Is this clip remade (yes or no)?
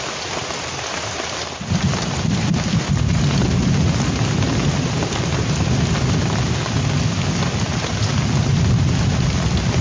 no